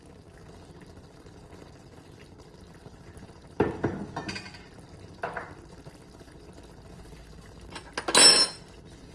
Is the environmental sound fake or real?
real